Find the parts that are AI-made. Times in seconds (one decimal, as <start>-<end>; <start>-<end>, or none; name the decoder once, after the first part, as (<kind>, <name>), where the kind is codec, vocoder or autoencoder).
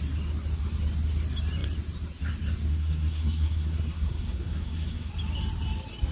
2.7-5.1 (codec, SNAC)